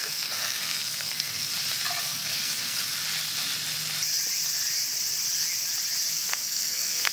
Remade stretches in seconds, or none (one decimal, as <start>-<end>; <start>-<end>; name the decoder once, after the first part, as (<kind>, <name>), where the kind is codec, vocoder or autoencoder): 0.0-1.5 (codec, SNAC); 2.0-2.8; 6.1-7.1